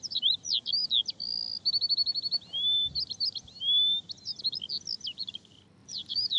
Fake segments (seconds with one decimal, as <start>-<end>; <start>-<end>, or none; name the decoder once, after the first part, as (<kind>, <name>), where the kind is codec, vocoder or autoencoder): 5.8-6.4 (vocoder, BigVGAN v2)